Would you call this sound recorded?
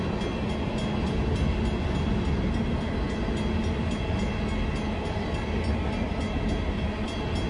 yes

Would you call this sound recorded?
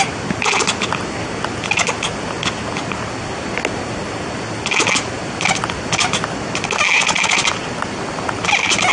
yes